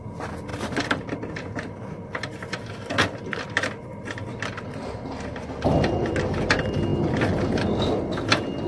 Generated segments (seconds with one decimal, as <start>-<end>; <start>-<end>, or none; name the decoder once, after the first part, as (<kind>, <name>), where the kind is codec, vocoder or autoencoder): none